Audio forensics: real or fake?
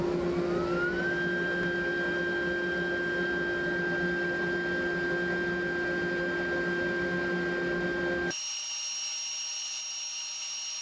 real